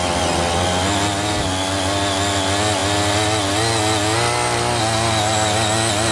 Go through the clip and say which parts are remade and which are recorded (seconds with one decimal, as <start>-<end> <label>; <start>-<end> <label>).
0.0-6.1 recorded